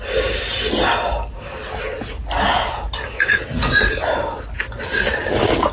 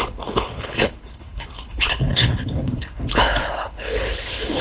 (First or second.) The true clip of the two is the first